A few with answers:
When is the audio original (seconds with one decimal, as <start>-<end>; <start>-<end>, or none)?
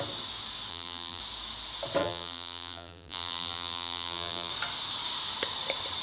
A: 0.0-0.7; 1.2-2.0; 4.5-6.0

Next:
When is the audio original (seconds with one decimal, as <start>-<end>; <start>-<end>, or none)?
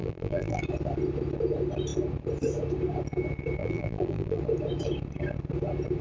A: 0.6-3.6; 4.4-6.0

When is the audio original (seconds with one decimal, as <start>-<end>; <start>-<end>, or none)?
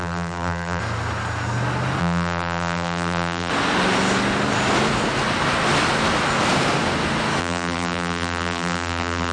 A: 0.8-2.0; 3.5-7.4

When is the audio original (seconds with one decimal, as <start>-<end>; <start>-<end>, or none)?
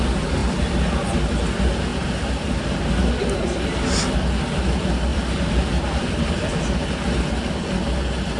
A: 0.0-1.9; 2.7-5.1; 6.5-8.4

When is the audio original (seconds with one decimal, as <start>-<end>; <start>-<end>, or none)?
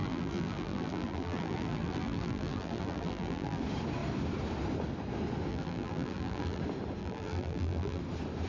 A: 3.6-5.5; 6.6-7.0; 8.0-8.5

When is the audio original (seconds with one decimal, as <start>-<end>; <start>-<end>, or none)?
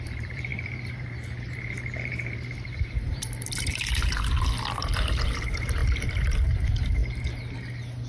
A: 7.0-8.1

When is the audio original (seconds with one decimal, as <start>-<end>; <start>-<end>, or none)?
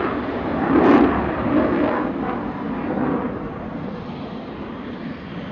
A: 0.5-3.8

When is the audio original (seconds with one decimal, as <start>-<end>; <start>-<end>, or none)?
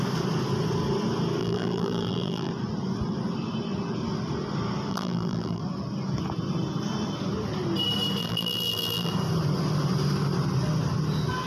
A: 0.0-1.4; 2.5-4.9; 5.6-8.2; 9.1-11.5